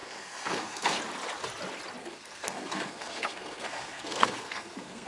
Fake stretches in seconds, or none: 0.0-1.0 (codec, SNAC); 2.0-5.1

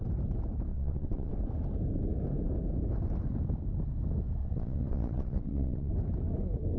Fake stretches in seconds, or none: 0.7-1.3 (vocoder, WaveNeXt); 4.4-5.9

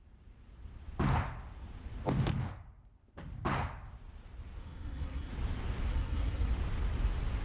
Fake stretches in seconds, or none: 4.6-5.3 (codec, SNAC); 5.9-6.5

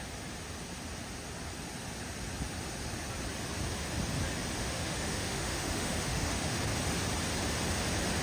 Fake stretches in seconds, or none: 4.6-6.6 (autoencoder, DAC-VAE)